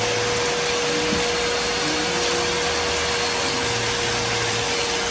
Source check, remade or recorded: recorded